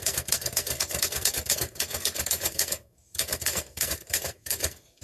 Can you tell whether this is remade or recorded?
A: remade